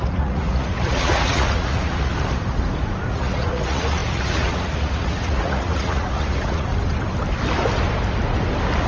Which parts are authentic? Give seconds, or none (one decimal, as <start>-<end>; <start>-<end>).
2.1-3.1; 6.7-8.9